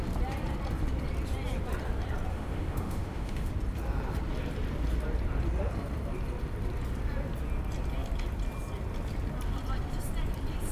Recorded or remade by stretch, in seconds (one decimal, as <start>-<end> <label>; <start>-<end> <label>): 0.0-2.3 recorded; 2.3-3.5 remade; 3.5-10.7 recorded